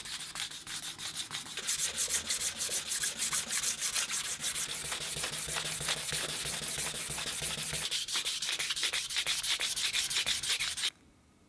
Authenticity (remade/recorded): recorded